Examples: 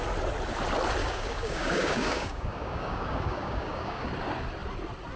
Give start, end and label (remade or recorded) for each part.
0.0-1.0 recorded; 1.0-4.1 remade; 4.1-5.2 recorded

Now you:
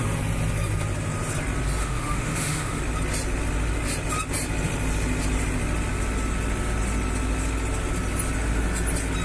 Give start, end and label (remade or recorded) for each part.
0.0-1.8 recorded; 1.8-2.8 remade; 2.8-9.2 recorded